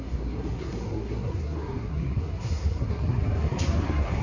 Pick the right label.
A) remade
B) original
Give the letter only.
A